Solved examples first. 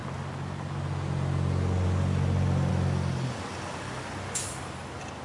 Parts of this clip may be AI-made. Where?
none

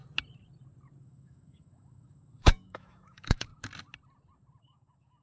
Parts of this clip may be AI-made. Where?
1.0-3.5 (autoencoder, DAC-VAE); 4.6-5.2

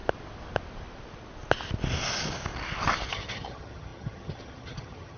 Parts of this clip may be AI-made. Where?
3.1-5.2 (vocoder, HiFi-GAN)

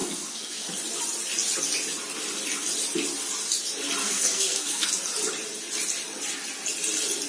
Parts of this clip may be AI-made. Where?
0.0-0.7 (codec, SNAC); 4.0-4.9

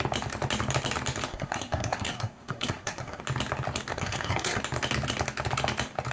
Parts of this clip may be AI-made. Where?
1.3-3.2 (codec, SNAC); 3.9-4.6

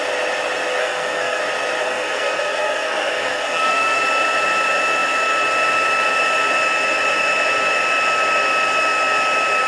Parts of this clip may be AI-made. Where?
0.8-1.4 (codec, SNAC); 1.8-4.0